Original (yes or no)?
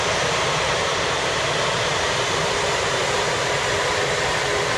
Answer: no